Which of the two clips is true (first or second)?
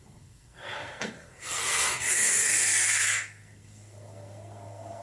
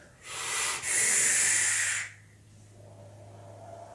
second